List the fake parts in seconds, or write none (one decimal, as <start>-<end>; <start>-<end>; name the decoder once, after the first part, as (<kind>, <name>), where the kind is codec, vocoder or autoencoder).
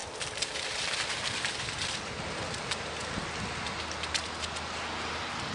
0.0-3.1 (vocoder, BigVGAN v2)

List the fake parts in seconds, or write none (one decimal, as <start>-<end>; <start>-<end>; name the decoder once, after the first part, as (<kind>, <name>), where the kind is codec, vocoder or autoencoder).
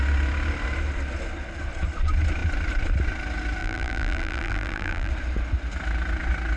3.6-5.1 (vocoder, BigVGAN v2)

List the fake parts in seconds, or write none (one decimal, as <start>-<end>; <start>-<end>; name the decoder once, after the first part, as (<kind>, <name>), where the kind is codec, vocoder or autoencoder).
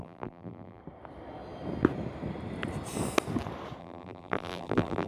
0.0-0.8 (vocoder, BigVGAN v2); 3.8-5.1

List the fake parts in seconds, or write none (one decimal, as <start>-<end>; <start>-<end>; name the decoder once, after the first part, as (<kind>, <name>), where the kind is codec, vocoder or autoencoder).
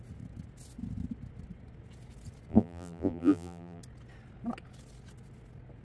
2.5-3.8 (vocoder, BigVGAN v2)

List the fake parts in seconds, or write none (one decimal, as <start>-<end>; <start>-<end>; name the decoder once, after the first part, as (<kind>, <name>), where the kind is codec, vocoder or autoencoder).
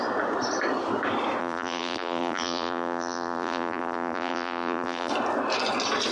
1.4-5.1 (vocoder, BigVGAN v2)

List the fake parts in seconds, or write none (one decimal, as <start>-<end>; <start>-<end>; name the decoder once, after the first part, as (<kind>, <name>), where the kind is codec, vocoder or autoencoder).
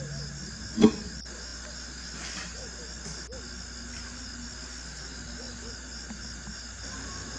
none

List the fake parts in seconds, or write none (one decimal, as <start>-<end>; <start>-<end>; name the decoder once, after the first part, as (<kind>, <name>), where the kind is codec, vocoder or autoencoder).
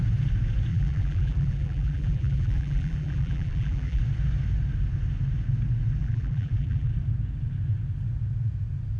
0.7-4.0 (vocoder, BigVGAN v2); 6.0-6.9